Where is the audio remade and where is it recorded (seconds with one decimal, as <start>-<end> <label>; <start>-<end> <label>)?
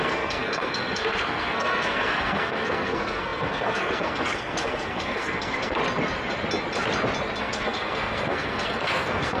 0.0-5.8 remade; 5.8-7.4 recorded; 7.4-9.4 remade